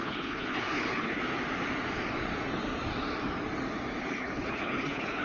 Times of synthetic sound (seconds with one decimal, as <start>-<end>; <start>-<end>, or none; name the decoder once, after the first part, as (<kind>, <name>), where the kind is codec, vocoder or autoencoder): 0.0-1.2 (codec, HILCodec); 4.0-5.2